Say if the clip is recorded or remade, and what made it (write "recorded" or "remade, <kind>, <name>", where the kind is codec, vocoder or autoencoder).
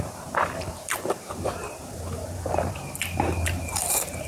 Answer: remade, vocoder, BigVGAN v2